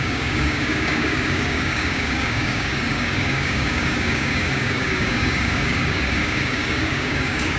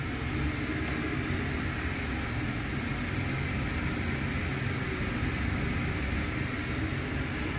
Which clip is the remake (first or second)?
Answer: first